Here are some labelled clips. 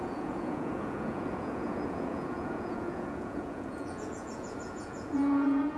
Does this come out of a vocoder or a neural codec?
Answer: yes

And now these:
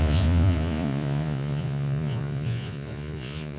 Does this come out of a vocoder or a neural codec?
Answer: yes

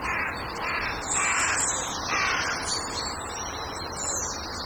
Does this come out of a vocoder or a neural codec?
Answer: no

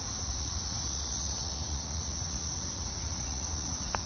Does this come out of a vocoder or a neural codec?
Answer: yes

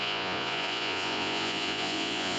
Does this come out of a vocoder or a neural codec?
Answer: yes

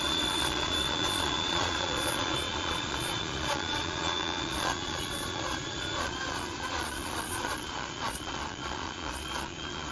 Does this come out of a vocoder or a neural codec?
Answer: yes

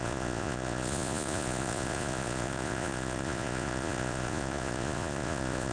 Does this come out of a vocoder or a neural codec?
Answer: yes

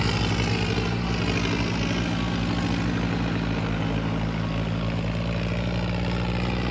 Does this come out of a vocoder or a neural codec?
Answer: no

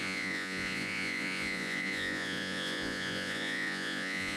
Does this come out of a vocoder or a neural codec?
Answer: yes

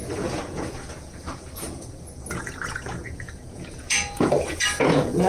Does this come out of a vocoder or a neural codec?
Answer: yes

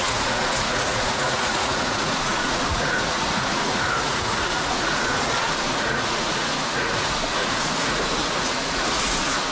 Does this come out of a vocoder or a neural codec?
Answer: yes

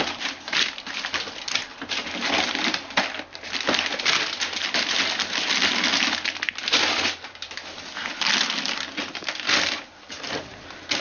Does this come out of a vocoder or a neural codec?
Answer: no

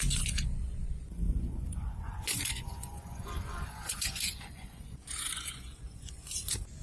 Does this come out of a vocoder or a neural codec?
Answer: yes